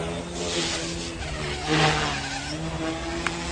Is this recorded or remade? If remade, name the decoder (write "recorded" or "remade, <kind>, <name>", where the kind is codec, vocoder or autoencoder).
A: recorded